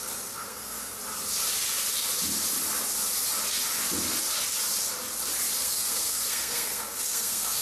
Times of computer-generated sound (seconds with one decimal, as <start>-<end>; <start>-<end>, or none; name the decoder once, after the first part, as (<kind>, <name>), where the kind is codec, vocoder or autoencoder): 0.0-1.0 (codec, SNAC); 5.6-7.6